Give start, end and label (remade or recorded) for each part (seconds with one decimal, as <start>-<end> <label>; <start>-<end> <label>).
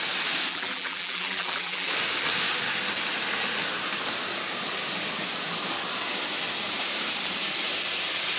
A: 0.0-0.5 recorded; 0.5-1.9 remade; 1.9-8.4 recorded